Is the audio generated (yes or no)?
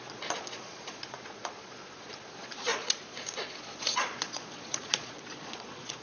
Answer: yes